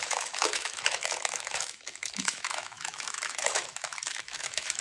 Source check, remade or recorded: remade